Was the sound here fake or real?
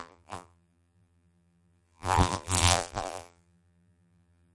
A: fake